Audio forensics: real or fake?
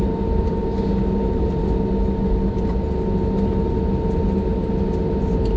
real